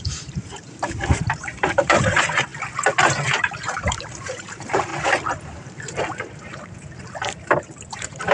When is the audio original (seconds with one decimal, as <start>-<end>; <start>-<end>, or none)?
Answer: 2.5-3.0; 4.9-5.4; 6.8-7.9